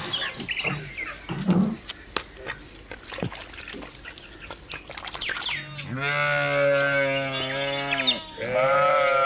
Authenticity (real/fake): real